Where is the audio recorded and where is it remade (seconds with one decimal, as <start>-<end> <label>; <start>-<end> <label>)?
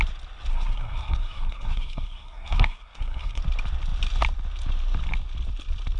0.0-0.5 recorded; 0.5-3.4 remade; 3.4-6.0 recorded